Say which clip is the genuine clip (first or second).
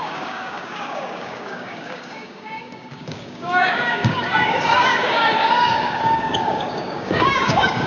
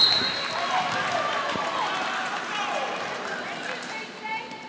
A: second